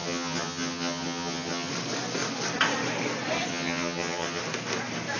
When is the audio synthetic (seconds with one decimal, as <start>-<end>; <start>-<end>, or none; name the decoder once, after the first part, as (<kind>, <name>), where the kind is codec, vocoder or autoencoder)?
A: 0.0-1.7 (vocoder, HiFi-GAN); 3.5-4.4